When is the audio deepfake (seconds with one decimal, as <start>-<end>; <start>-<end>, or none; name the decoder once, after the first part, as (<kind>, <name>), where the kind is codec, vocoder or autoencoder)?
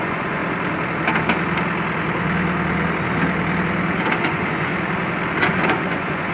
0.0-0.4 (vocoder, Vocos); 4.2-4.7; 5.4-6.3